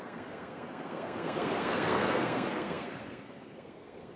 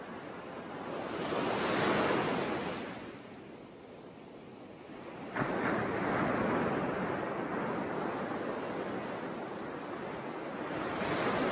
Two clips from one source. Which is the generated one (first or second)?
first